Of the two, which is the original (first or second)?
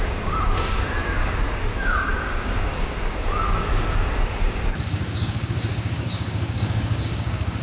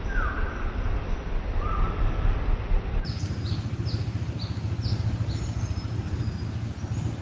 second